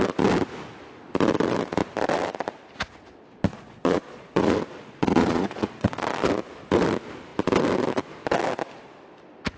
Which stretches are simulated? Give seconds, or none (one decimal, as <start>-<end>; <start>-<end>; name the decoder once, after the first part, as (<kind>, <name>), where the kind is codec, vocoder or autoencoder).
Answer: 3.5-6.0 (vocoder, Vocos)